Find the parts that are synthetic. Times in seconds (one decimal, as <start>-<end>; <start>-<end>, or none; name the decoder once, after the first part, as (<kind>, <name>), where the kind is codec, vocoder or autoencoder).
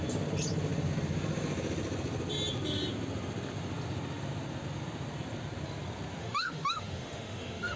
6.2-7.8 (autoencoder, DAC-VAE)